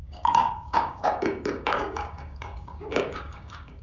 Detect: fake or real fake